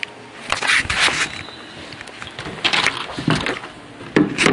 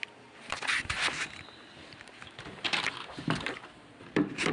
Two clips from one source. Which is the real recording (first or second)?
first